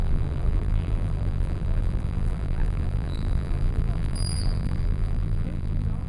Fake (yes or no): yes